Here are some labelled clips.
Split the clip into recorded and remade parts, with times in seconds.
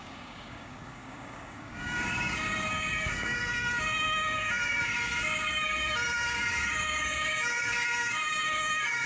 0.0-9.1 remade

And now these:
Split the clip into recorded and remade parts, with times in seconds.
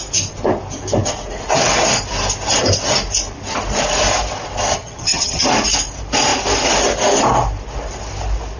0.0-4.7 recorded; 4.7-5.4 remade; 5.4-8.6 recorded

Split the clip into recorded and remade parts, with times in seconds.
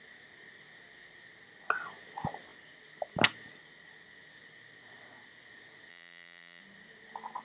0.0-5.9 recorded; 5.9-6.6 remade; 6.6-7.4 recorded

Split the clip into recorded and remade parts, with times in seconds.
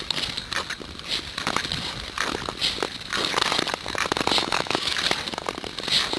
0.0-4.4 recorded; 4.4-5.0 remade; 5.0-6.2 recorded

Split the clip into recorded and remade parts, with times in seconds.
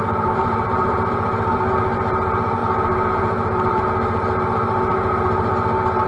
0.0-1.7 remade; 1.7-2.6 recorded; 2.6-3.8 remade; 3.8-4.9 recorded; 4.9-5.5 remade; 5.5-6.1 recorded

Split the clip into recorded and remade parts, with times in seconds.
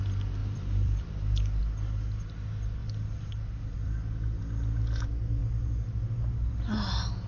0.0-0.4 recorded; 0.4-1.6 remade; 1.6-2.8 recorded; 2.8-4.4 remade; 4.4-7.3 recorded